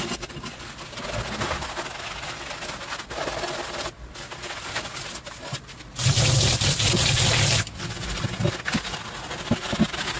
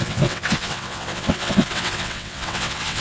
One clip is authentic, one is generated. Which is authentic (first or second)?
first